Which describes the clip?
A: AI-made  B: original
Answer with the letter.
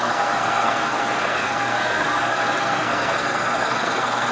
A